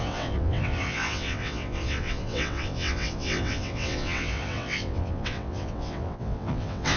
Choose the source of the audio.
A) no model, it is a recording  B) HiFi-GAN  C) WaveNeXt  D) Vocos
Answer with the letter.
C